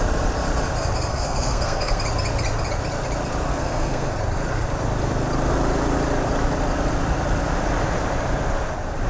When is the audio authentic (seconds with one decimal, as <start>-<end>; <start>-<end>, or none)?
0.0-1.1; 2.0-3.5; 4.1-9.1